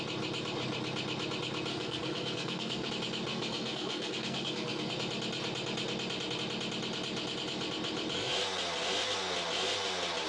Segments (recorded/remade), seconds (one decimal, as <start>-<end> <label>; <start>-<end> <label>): 0.0-1.7 recorded; 1.7-2.9 remade; 2.9-3.3 recorded; 3.3-4.9 remade; 4.9-10.3 recorded

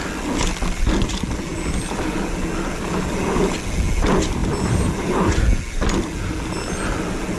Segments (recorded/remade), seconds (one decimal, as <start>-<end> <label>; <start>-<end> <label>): 0.0-7.4 recorded

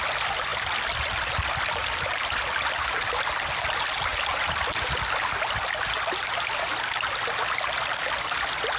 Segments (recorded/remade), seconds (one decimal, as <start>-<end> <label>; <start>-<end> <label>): 0.0-8.8 recorded

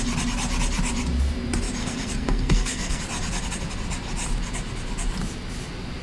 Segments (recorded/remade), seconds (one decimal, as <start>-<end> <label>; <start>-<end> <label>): 0.0-1.8 recorded; 1.8-3.0 remade; 3.0-6.0 recorded

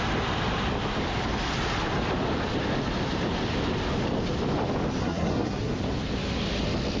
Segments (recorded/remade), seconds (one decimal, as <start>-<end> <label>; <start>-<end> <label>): 0.0-5.0 recorded; 5.0-5.7 remade; 5.7-7.0 recorded